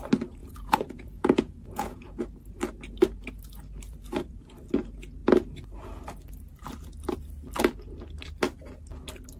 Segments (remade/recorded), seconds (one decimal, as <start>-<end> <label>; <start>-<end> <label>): 0.0-0.4 recorded; 0.4-2.2 remade; 2.2-9.4 recorded